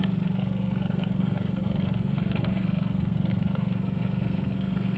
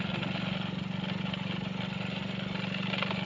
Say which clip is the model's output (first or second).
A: first